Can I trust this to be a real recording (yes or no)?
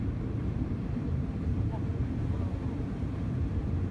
no